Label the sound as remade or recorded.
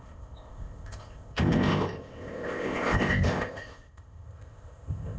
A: remade